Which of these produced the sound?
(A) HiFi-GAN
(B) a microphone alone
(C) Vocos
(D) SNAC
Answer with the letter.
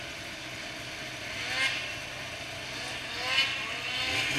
B